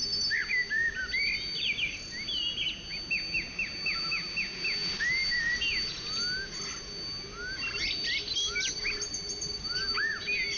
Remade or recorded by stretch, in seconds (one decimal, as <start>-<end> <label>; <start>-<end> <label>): 0.0-10.6 recorded